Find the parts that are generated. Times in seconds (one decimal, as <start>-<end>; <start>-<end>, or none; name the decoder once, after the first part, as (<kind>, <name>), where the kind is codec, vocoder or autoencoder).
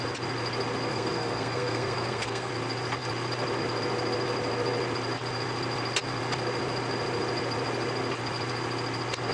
0.9-2.5 (codec, SNAC)